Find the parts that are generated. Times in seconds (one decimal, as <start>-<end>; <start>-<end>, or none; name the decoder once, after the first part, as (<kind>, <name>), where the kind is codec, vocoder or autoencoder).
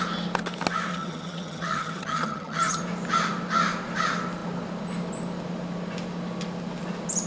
0.9-2.8 (vocoder, HiFi-GAN)